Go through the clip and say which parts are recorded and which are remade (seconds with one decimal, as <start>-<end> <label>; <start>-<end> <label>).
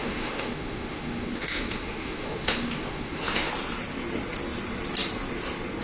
0.0-3.5 remade; 3.5-5.8 recorded